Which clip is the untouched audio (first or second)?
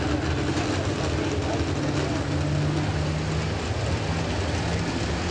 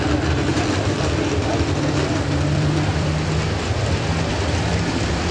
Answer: first